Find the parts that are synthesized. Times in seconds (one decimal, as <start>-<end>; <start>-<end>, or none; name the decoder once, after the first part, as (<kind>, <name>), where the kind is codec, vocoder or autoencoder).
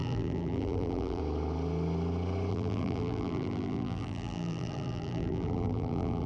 0.0-1.2 (vocoder, BigVGAN v2); 2.5-6.3